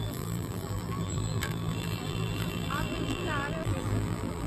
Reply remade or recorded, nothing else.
remade